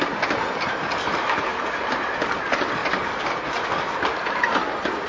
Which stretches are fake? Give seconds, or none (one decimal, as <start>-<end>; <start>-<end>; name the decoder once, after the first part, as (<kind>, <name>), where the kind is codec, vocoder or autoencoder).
1.1-1.6 (autoencoder, DAC-VAE)